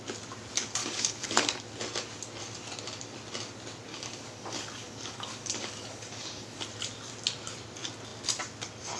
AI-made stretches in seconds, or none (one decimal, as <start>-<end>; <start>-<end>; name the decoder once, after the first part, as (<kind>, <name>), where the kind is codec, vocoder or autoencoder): 0.8-1.6 (codec, DAC); 3.9-6.6